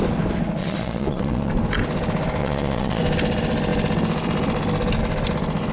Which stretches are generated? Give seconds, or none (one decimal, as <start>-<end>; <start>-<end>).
0.6-1.5; 2.4-3.0